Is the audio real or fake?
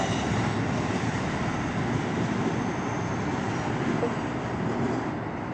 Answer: real